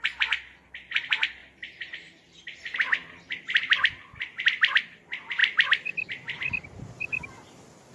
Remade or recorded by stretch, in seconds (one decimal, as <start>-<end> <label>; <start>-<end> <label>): 0.0-7.9 recorded